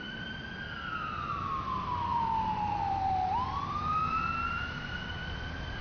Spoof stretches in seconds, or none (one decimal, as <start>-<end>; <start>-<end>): 0.0-5.8